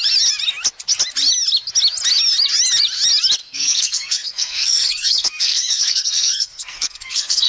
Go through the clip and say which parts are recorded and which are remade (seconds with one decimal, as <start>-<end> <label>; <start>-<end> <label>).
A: 0.0-3.4 recorded; 3.4-7.5 remade